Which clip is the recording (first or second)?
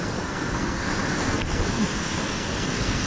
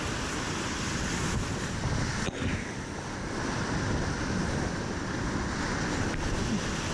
second